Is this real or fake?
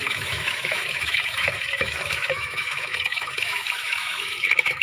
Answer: fake